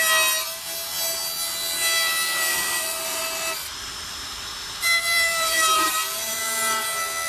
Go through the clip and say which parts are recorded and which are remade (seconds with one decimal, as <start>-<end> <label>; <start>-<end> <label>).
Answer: 0.0-2.5 recorded; 2.5-3.2 remade; 3.2-3.6 recorded; 3.6-6.4 remade; 6.4-7.3 recorded